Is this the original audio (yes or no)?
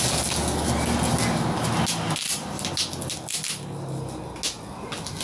yes